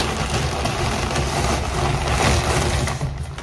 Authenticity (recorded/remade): recorded